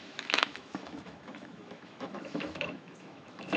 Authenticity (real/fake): fake